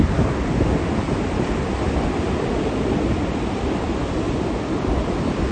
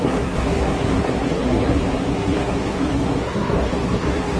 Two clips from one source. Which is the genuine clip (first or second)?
first